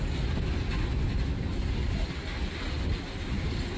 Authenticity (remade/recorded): recorded